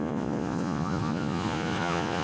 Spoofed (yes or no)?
yes